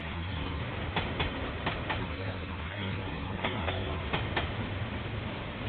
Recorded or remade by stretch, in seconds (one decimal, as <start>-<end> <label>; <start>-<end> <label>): 0.0-0.6 remade; 0.6-2.0 recorded; 2.0-4.0 remade; 4.0-5.7 recorded